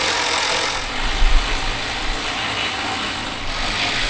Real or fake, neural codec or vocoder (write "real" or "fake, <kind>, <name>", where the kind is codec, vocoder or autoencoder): real